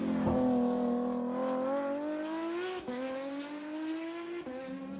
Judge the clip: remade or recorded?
recorded